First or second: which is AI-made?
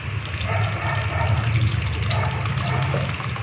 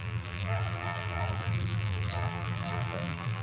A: second